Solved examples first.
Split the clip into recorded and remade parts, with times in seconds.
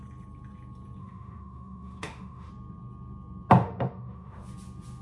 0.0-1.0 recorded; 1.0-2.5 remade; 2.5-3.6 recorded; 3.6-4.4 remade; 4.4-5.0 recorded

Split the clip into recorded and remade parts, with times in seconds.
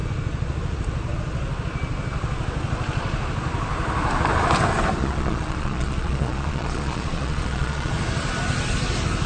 0.0-5.0 recorded; 5.0-7.9 remade; 7.9-9.3 recorded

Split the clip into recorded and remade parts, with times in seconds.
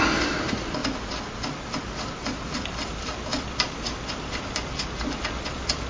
0.0-5.9 recorded